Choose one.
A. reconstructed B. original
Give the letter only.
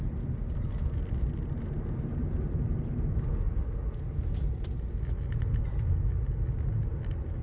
B